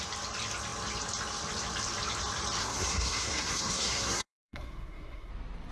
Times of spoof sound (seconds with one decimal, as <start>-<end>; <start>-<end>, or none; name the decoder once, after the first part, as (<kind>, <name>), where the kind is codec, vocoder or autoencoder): 2.6-5.3 (codec, SNAC)